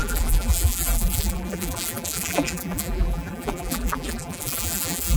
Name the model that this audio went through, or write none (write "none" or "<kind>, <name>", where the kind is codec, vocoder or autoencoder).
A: vocoder, BigVGAN v2